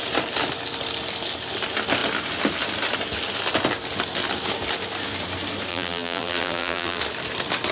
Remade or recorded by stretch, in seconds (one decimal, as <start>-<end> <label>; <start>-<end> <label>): 0.0-5.7 recorded; 5.7-7.0 remade; 7.0-7.7 recorded